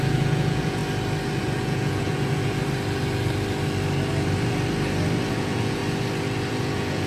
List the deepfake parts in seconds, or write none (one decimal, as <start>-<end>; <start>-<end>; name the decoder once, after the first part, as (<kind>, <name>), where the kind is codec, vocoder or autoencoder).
0.0-0.8 (vocoder, Vocos); 1.4-2.6; 5.3-5.8; 6.5-7.1